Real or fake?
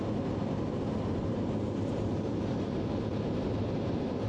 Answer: real